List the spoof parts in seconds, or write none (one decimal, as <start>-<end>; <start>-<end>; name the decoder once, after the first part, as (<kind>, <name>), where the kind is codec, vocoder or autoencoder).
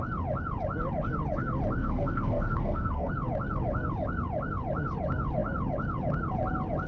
1.8-3.1 (codec, SNAC)